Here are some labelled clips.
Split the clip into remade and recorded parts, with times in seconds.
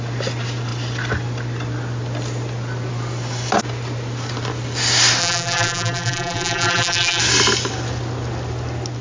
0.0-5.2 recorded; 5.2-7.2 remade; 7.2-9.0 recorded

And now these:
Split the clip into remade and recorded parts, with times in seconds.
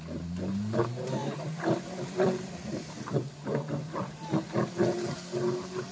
0.0-1.2 recorded; 1.2-4.7 remade; 4.7-5.9 recorded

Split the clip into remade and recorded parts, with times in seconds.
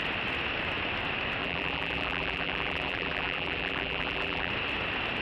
0.0-1.4 recorded; 1.4-4.5 remade; 4.5-5.2 recorded